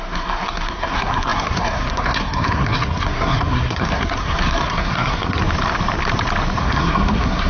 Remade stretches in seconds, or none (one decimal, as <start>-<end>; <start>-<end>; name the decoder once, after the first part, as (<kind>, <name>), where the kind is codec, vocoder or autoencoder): 0.0-5.4 (codec, SNAC); 6.6-7.5